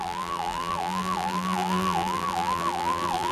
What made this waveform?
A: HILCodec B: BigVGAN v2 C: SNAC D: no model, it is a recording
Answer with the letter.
B